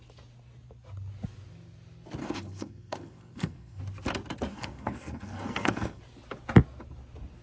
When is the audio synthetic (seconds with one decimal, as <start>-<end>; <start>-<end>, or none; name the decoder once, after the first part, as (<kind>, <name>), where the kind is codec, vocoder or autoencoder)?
2.2-3.8 (codec, SNAC); 4.5-6.0